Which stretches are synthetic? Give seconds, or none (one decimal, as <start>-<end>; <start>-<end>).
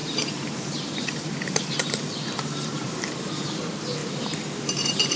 0.0-4.0; 4.6-5.2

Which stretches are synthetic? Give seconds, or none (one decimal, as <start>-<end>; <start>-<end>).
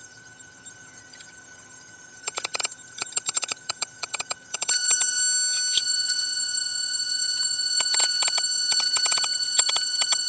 0.0-5.2; 5.8-10.3